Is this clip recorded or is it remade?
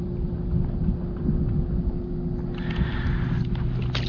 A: recorded